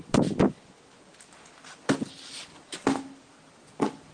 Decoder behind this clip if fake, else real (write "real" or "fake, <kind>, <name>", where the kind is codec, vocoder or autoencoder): real